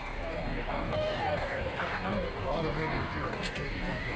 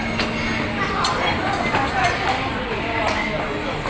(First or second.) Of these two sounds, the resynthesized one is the first